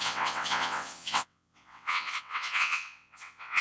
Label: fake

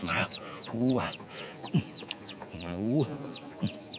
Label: fake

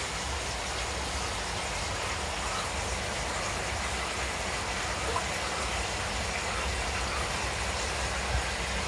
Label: real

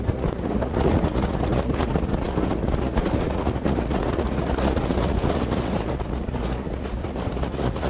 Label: fake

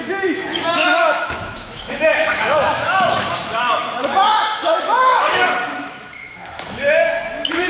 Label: fake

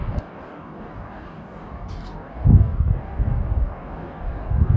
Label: fake